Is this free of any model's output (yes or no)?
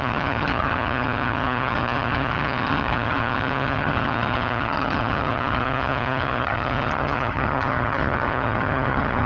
no